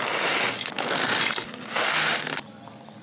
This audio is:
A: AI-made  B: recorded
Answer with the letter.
B